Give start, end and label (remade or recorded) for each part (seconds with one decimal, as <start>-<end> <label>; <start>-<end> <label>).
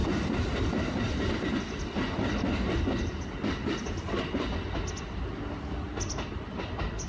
0.0-7.1 recorded